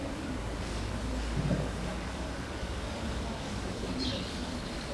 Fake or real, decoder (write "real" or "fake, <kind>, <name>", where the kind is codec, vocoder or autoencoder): fake, codec, DAC